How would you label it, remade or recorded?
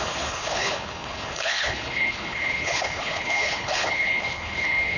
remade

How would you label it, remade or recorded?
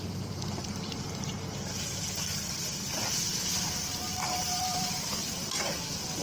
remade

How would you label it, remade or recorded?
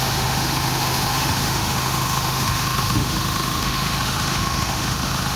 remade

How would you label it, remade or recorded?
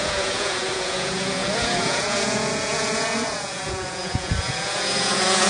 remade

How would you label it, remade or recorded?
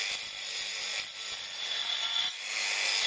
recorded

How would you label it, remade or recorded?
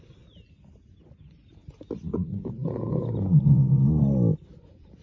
recorded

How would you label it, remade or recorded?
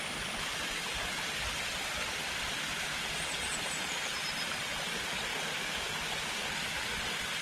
recorded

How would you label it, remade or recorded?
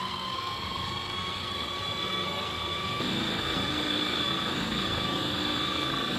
remade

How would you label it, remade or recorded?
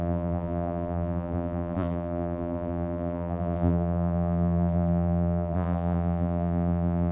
remade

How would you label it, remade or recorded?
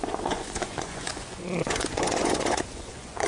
remade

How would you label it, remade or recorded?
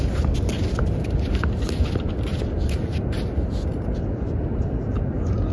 recorded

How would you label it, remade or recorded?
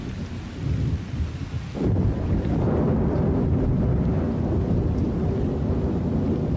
recorded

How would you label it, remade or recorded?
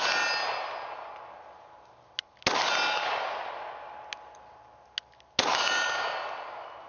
recorded